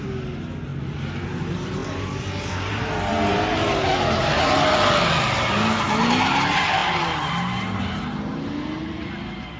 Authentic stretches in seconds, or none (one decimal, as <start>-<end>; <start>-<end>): 0.0-9.6